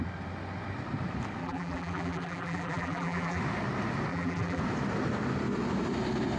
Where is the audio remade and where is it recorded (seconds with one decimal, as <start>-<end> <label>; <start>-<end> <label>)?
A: 0.0-1.4 recorded; 1.4-3.4 remade; 3.4-4.1 recorded; 4.1-4.6 remade; 4.6-6.4 recorded